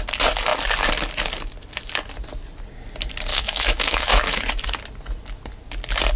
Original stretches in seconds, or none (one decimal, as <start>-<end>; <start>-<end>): 0.0-3.3; 4.4-6.2